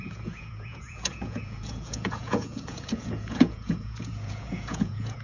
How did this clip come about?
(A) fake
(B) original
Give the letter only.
A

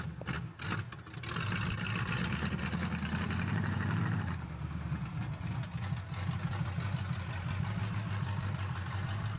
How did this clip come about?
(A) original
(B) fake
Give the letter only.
A